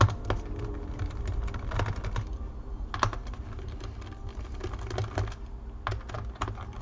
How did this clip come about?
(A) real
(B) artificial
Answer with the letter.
A